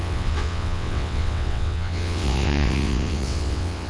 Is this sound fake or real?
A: fake